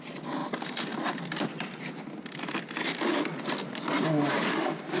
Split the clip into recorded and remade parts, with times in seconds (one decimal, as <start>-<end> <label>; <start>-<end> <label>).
0.0-5.0 recorded